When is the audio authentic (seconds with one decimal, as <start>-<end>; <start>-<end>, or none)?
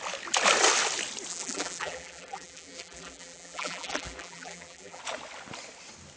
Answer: 0.0-1.3; 5.0-6.2